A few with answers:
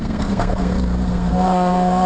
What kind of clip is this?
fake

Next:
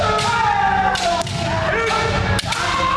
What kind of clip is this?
real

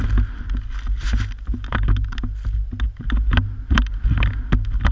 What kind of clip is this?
real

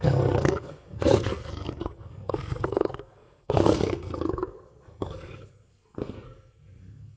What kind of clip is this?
fake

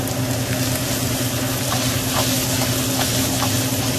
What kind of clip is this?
real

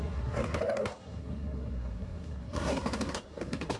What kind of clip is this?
fake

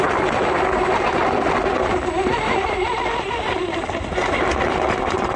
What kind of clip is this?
real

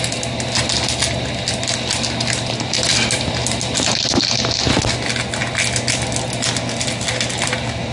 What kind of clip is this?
real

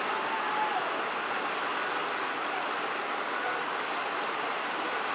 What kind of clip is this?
real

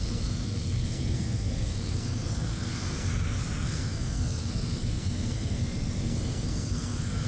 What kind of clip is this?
fake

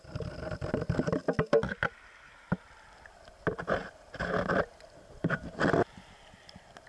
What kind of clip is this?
real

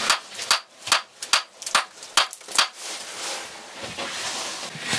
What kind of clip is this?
real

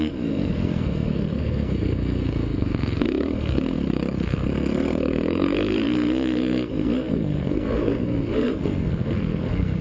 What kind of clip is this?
fake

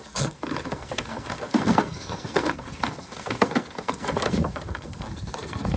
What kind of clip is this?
fake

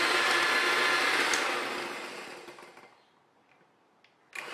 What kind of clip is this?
real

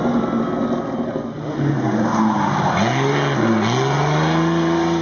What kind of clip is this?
real